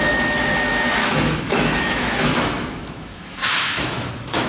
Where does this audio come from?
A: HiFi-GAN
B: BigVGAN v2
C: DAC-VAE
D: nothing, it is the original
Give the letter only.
C